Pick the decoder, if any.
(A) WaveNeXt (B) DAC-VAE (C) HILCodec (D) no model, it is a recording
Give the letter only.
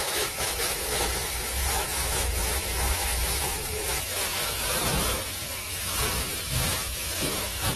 B